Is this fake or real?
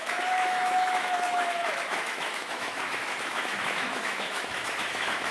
fake